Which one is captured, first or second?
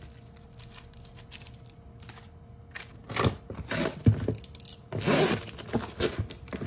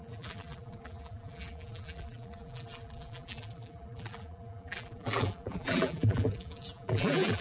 first